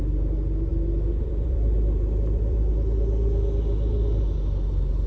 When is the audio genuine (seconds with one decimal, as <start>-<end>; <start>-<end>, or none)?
0.0-0.7; 2.7-5.1